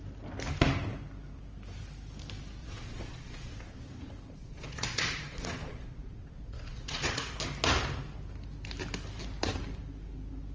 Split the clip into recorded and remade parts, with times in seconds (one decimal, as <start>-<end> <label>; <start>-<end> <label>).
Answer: 0.0-2.6 recorded; 2.6-7.2 remade; 7.2-10.5 recorded